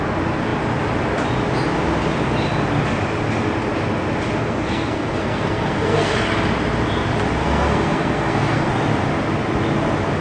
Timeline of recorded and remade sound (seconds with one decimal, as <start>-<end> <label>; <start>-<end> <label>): 0.0-4.4 recorded; 4.4-6.1 remade; 6.1-7.4 recorded; 7.4-8.7 remade; 8.7-10.2 recorded